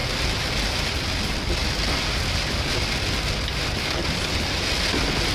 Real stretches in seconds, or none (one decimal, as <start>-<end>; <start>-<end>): 0.0-5.3